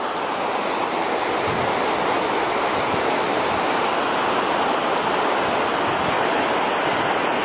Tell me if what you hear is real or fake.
real